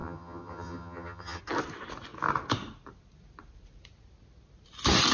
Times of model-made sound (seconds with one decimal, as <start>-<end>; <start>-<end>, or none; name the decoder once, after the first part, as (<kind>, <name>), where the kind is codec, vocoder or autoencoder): 0.0-1.4 (vocoder, HiFi-GAN)